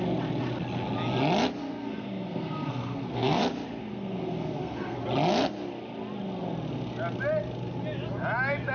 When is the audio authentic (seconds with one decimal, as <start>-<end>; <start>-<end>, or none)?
0.0-1.6; 3.4-3.8; 5.0-8.7